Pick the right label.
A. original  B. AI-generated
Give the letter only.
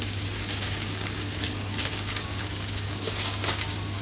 B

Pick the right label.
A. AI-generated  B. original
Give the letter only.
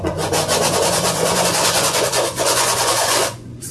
A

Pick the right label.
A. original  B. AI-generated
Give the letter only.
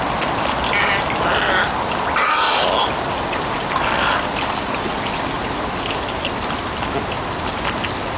A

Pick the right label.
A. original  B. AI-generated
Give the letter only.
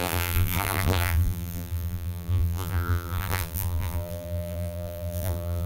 B